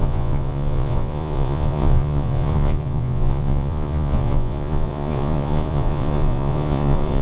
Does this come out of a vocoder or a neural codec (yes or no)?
yes